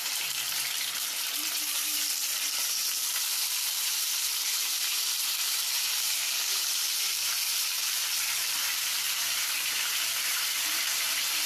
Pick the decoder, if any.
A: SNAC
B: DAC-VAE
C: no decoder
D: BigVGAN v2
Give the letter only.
D